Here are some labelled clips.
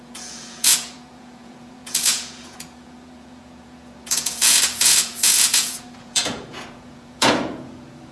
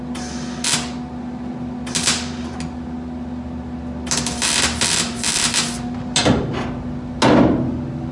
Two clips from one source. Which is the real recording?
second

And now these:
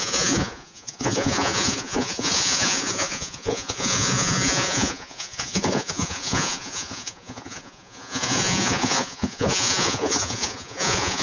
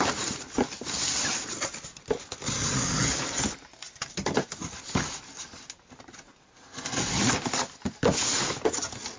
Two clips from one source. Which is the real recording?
second